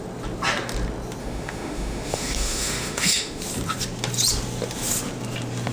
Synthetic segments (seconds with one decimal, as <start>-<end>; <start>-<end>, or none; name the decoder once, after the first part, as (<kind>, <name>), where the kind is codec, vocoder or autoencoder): 1.2-3.4 (autoencoder, DAC-VAE)